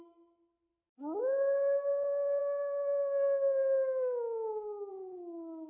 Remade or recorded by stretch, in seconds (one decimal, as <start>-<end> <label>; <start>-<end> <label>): 0.0-2.4 recorded; 2.4-4.9 remade; 4.9-5.7 recorded